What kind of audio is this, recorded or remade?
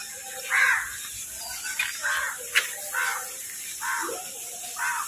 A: recorded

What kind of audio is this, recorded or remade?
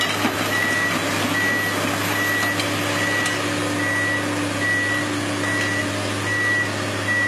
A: recorded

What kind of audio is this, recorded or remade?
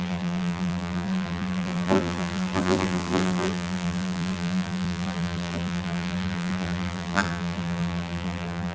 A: remade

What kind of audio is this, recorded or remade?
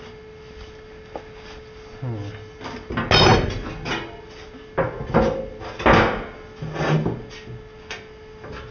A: recorded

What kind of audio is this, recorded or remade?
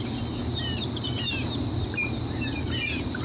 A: recorded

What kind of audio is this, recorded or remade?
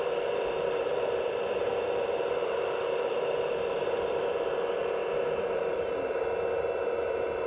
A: remade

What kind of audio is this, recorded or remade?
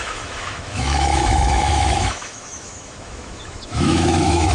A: remade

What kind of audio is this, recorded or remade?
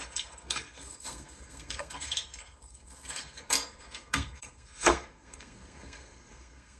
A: remade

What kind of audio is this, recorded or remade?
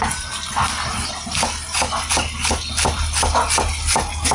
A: recorded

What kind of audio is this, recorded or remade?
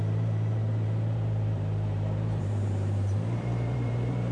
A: remade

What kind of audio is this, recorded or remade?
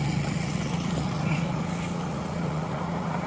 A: remade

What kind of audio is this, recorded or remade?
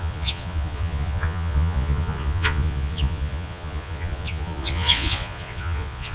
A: remade